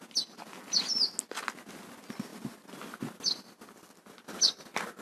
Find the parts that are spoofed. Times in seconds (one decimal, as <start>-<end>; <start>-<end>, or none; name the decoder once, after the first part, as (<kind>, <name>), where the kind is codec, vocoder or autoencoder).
none